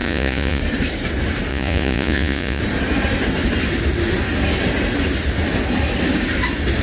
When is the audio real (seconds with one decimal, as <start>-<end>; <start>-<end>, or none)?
0.6-1.5; 2.6-6.8